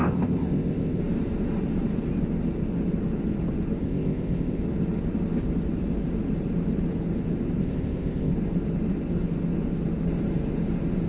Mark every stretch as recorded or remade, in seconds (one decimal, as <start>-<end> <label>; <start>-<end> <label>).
0.0-1.0 remade; 1.0-3.8 recorded; 3.8-4.6 remade; 4.6-7.6 recorded; 7.6-8.3 remade; 8.3-11.1 recorded